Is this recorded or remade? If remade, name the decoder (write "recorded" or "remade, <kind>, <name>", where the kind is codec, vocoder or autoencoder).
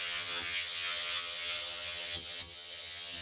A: remade, vocoder, HiFi-GAN